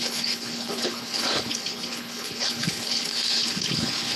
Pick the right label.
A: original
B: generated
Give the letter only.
B